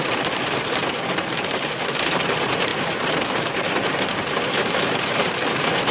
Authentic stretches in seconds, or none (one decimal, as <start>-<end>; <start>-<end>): 2.7-3.5